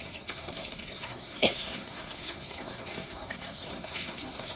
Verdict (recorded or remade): remade